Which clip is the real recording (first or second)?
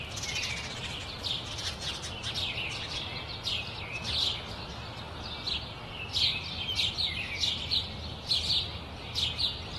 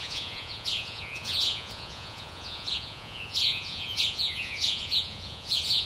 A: first